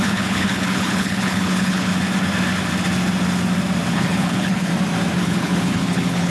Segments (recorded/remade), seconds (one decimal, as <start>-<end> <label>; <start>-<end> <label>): 0.0-1.9 remade; 1.9-3.9 recorded; 3.9-4.7 remade; 4.7-5.2 recorded; 5.2-6.3 remade